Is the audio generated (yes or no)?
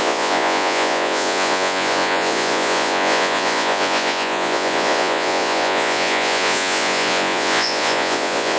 yes